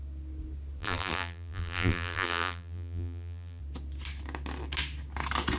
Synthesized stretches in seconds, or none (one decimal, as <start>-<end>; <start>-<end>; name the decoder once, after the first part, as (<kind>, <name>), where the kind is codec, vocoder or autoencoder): 0.8-3.6 (vocoder, BigVGAN v2)